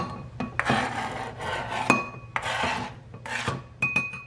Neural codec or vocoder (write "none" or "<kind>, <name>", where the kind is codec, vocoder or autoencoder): none